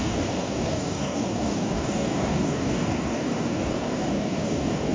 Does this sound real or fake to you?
fake